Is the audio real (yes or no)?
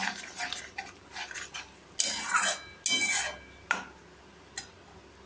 yes